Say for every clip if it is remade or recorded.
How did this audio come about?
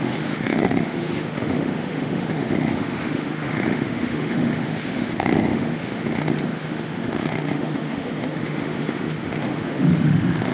remade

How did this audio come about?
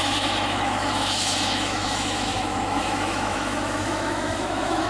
remade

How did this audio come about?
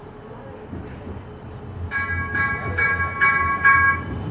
recorded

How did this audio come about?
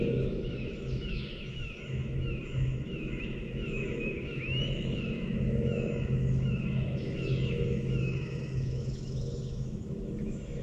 remade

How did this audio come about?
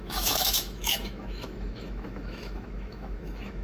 remade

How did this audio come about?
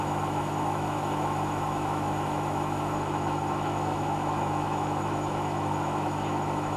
remade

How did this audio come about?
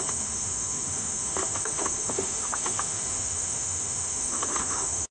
remade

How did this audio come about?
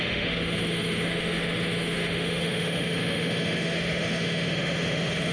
remade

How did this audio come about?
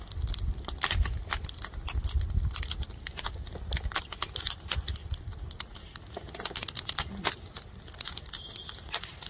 recorded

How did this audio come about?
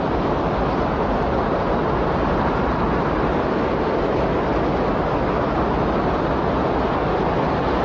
recorded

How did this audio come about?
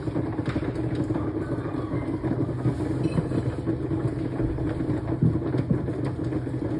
recorded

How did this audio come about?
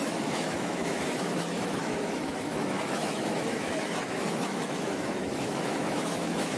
remade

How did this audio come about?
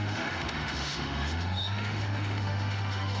remade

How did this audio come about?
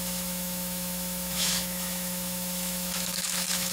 remade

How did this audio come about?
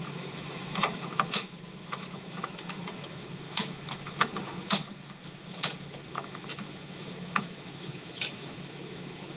remade